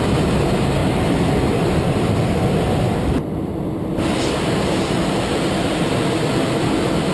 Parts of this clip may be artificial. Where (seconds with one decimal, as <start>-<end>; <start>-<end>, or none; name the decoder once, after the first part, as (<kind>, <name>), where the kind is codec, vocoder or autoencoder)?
none